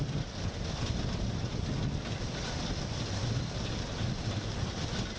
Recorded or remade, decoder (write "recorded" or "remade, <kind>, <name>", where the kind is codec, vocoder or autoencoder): recorded